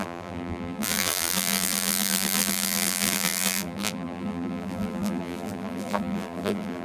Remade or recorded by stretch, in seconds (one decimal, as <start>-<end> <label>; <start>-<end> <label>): 0.0-6.8 remade